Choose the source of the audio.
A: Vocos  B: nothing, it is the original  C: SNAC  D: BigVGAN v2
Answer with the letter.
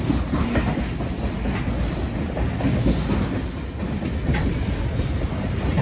B